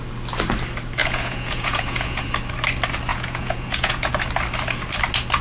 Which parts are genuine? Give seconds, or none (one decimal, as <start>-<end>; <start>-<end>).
0.0-1.0; 2.2-3.1; 4.1-5.4